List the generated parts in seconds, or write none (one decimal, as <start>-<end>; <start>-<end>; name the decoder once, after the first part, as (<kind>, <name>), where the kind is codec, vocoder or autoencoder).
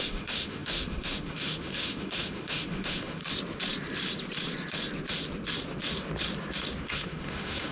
0.0-3.2 (autoencoder, DAC-VAE); 6.8-7.7